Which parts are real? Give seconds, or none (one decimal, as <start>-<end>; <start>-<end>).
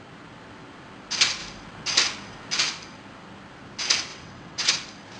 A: 0.0-4.1; 4.7-5.2